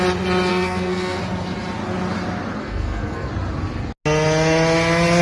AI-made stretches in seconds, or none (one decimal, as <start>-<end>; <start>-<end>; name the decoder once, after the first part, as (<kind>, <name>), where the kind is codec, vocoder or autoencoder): 0.5-1.2 (codec, SNAC); 2.6-3.3